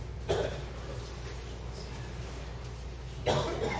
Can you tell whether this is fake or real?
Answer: real